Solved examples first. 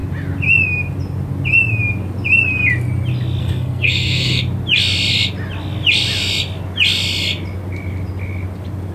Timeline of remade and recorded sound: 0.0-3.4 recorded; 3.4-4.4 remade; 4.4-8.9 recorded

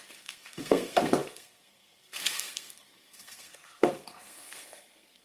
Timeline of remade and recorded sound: 0.0-5.2 remade